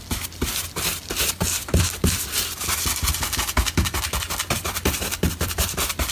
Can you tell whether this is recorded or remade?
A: recorded